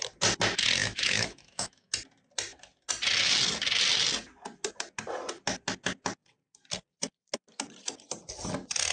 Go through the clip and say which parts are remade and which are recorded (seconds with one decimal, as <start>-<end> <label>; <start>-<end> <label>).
0.0-0.8 recorded; 0.8-1.9 remade; 1.9-8.9 recorded